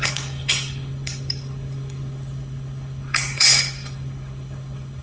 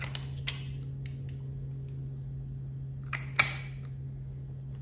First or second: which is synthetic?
first